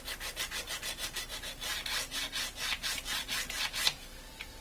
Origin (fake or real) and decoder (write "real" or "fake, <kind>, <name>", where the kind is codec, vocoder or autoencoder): real